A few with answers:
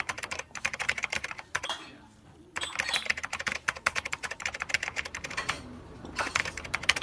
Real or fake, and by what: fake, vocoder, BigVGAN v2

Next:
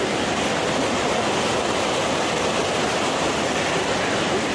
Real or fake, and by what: real